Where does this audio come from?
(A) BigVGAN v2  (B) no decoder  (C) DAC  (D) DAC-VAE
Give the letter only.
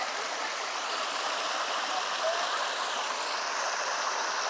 A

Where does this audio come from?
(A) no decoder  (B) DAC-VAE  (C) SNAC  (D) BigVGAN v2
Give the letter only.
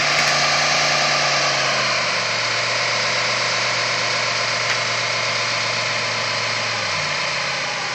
A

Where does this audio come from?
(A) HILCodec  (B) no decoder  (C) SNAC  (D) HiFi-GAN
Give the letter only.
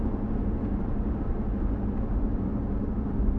B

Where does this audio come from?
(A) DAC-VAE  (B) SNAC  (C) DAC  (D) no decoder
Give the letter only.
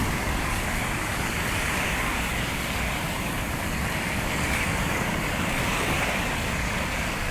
C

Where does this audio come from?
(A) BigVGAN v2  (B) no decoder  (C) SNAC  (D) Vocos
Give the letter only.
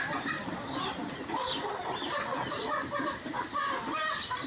B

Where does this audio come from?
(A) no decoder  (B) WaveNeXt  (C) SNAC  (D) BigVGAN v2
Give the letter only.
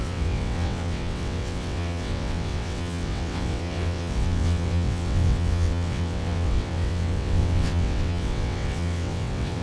B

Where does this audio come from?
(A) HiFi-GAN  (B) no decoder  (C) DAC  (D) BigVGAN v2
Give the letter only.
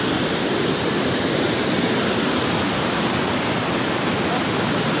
B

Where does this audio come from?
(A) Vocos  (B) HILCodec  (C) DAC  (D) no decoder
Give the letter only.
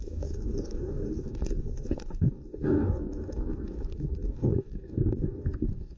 C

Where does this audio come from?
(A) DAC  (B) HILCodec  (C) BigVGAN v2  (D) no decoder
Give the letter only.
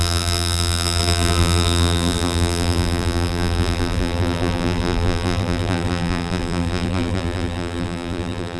C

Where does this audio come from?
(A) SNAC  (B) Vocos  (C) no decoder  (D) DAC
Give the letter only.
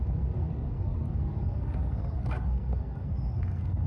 A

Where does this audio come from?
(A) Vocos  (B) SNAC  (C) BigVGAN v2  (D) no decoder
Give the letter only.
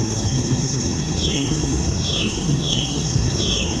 B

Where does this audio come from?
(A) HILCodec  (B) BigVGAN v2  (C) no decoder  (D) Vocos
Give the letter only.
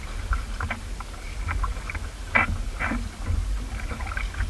C